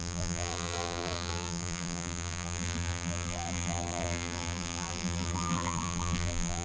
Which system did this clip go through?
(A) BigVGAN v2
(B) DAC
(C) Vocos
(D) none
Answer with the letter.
A